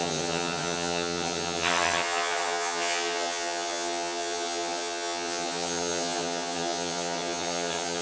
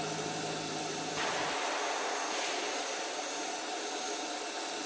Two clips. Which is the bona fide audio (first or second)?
second